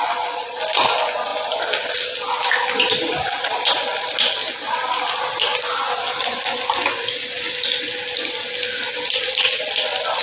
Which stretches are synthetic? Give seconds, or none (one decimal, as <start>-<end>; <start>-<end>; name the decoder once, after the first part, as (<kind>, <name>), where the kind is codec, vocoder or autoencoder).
4.4-5.3 (vocoder, BigVGAN v2)